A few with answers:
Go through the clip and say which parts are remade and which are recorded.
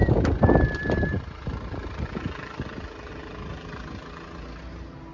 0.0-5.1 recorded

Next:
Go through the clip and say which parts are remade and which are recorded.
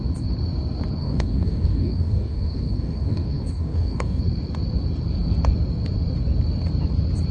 0.0-1.0 recorded; 1.0-4.2 remade; 4.2-7.3 recorded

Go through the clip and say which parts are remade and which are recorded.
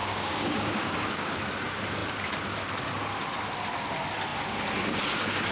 0.0-1.4 remade; 1.4-5.5 recorded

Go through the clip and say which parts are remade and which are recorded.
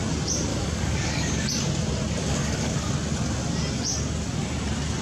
0.0-0.5 recorded; 0.5-1.5 remade; 1.5-2.2 recorded; 2.2-2.9 remade; 2.9-5.0 recorded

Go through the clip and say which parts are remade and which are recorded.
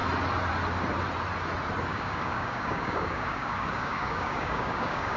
0.0-1.9 recorded; 1.9-5.2 remade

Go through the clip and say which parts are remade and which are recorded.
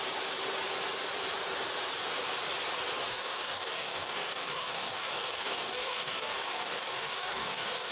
0.0-3.1 recorded; 3.1-7.9 remade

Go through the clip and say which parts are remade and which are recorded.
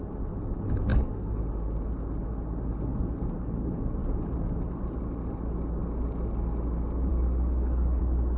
0.0-0.9 recorded; 0.9-1.4 remade; 1.4-7.1 recorded; 7.1-8.0 remade; 8.0-8.4 recorded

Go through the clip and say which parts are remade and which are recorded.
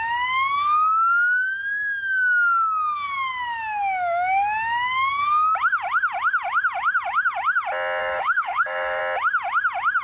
0.0-8.0 recorded; 8.0-9.0 remade; 9.0-10.0 recorded